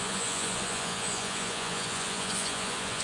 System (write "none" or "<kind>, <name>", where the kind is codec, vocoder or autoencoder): vocoder, Vocos